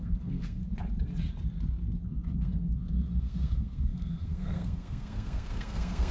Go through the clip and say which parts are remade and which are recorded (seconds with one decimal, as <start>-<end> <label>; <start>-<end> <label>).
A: 0.0-0.6 remade; 0.6-2.4 recorded; 2.4-6.1 remade

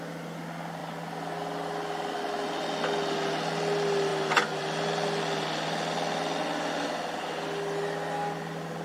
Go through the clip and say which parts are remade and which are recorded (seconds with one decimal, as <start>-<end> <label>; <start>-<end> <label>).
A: 0.0-8.8 recorded

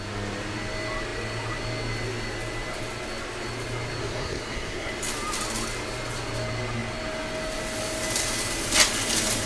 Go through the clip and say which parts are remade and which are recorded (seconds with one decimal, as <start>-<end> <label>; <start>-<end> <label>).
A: 0.0-4.0 recorded; 4.0-4.9 remade; 4.9-9.5 recorded

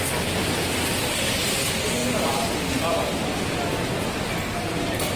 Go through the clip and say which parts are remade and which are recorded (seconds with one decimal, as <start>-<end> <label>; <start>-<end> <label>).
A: 0.0-5.2 recorded

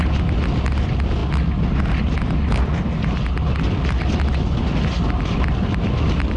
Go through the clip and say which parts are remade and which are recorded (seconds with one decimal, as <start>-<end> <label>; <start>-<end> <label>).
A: 0.0-6.4 recorded

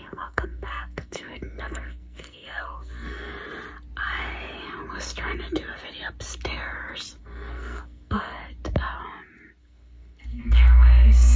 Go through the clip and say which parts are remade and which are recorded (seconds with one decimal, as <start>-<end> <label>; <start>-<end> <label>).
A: 0.0-3.3 remade; 3.3-7.2 recorded; 7.2-8.4 remade; 8.4-9.6 recorded; 9.6-11.4 remade

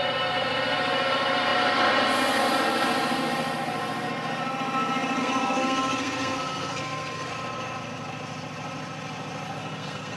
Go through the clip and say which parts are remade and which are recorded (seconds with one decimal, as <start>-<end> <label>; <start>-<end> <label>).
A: 0.0-5.2 recorded; 5.2-7.3 remade; 7.3-9.6 recorded; 9.6-10.2 remade

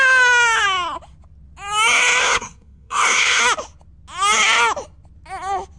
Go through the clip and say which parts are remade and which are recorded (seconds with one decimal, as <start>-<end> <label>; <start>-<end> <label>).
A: 0.0-2.2 recorded; 2.2-3.4 remade; 3.4-5.8 recorded